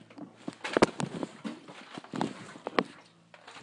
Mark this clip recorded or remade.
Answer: recorded